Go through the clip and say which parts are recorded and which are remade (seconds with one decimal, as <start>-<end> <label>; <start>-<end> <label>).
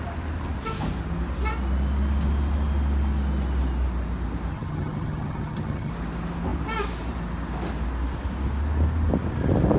0.0-4.5 recorded; 4.5-5.9 remade; 5.9-9.8 recorded